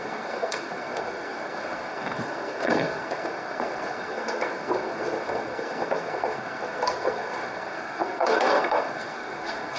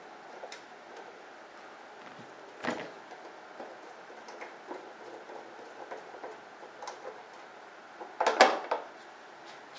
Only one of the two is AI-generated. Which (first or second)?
first